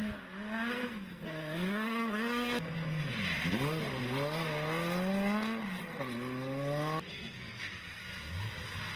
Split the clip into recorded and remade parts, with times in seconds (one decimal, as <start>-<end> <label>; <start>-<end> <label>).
0.0-0.7 recorded; 0.7-3.1 remade; 3.1-7.1 recorded; 7.1-8.0 remade; 8.0-9.0 recorded

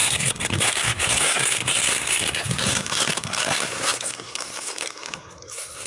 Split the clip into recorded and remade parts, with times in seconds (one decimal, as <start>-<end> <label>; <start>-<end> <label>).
0.0-5.9 remade

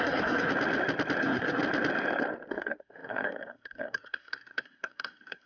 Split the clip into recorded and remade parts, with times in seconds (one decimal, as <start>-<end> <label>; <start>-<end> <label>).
0.0-0.5 remade; 0.5-1.2 recorded; 1.2-1.6 remade; 1.6-2.5 recorded; 2.5-5.5 remade

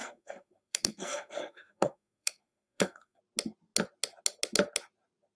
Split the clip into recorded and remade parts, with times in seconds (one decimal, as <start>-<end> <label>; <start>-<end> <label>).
0.0-3.2 remade; 3.2-5.4 recorded

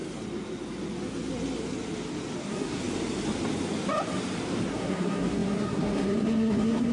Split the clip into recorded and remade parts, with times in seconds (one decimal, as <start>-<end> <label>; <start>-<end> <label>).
0.0-2.4 recorded; 2.4-2.8 remade; 2.8-4.7 recorded; 4.7-6.9 remade

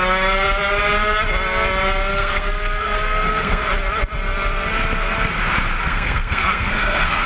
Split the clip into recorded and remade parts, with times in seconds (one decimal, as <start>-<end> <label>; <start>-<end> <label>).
0.0-2.1 recorded; 2.1-3.7 remade; 3.7-5.9 recorded; 5.9-7.3 remade

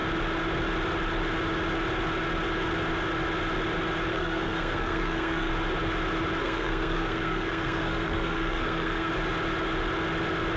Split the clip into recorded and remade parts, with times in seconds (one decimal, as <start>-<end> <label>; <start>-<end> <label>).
0.0-4.1 recorded; 4.1-5.5 remade; 5.5-6.4 recorded; 6.4-9.1 remade; 9.1-10.6 recorded

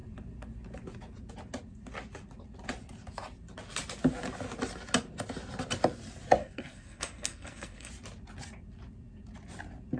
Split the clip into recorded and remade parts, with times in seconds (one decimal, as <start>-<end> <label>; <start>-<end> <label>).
0.0-6.4 recorded; 6.4-7.9 remade; 7.9-10.0 recorded